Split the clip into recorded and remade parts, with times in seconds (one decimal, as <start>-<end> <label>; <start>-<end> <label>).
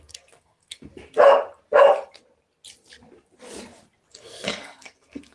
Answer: 0.0-0.9 remade; 0.9-4.1 recorded; 4.1-5.3 remade